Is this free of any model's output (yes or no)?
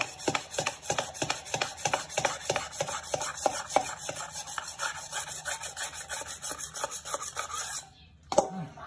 yes